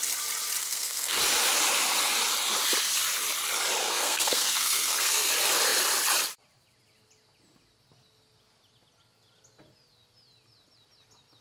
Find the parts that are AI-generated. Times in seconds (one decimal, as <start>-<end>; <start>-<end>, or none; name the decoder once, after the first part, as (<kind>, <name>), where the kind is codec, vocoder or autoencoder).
0.6-1.2 (codec, SNAC); 3.8-5.3

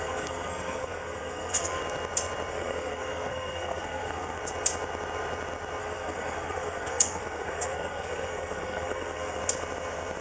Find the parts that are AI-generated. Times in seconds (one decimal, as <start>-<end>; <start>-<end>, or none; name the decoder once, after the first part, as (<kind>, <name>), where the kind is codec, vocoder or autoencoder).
0.0-1.8 (codec, SNAC); 2.5-4.4; 5.8-9.4

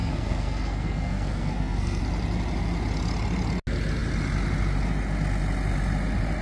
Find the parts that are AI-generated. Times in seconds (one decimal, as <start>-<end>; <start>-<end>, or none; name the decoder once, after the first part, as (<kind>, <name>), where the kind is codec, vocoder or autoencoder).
0.0-2.0 (codec, SNAC)

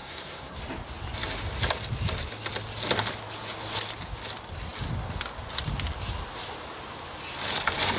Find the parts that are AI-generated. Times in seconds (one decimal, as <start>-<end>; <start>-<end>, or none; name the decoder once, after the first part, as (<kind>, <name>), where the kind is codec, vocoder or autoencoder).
0.0-0.6 (codec, SNAC)

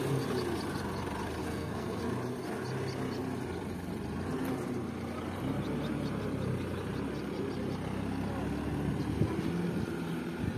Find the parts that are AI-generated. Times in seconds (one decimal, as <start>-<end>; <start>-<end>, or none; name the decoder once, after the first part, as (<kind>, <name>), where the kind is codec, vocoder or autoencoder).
1.4-2.0 (codec, SNAC)

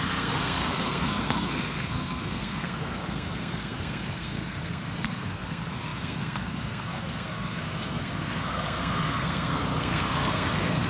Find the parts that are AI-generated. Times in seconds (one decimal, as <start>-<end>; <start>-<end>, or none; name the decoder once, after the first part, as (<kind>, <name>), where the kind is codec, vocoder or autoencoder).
0.0-10.9 (codec, SNAC)